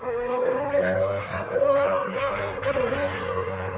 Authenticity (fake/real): fake